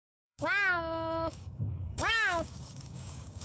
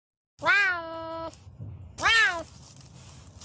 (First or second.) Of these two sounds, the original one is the second